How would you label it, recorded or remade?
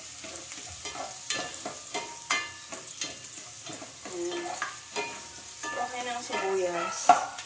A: recorded